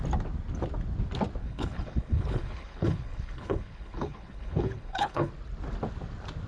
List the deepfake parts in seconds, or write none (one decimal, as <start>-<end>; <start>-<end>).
1.4-5.3